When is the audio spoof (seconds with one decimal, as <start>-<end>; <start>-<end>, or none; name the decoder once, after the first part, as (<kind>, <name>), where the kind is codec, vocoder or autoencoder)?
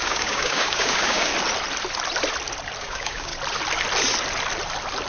0.0-1.3 (codec, DAC); 2.8-3.3